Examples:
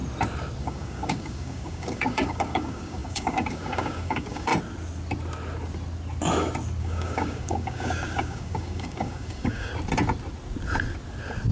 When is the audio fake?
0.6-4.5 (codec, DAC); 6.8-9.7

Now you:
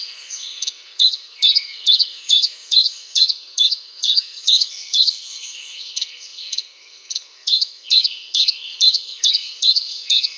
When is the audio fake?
0.0-10.4 (codec, SNAC)